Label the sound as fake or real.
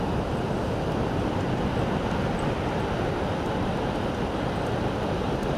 real